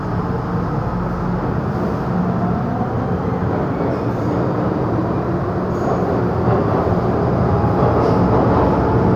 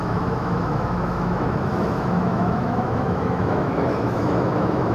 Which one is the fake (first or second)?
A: second